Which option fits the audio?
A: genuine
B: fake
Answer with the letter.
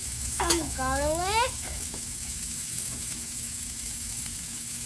B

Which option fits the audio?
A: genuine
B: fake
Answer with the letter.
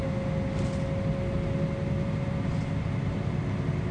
A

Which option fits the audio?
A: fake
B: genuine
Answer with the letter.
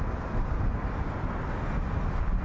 B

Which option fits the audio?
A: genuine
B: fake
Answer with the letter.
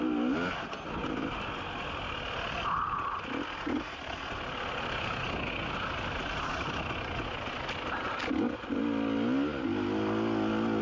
A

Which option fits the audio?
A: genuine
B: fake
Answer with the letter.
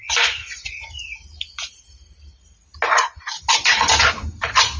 A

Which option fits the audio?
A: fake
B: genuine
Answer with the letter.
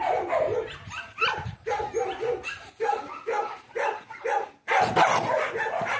B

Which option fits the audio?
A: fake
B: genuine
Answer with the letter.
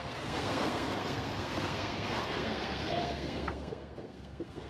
A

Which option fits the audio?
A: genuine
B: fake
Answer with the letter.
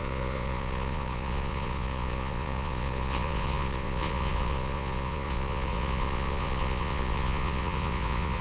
B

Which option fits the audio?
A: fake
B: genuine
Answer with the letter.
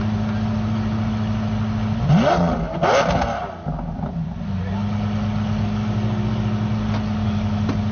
B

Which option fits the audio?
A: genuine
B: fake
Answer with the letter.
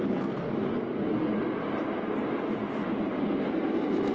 A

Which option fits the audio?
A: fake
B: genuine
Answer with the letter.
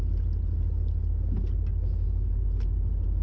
B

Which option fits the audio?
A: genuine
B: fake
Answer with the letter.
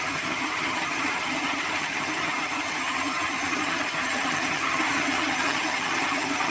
B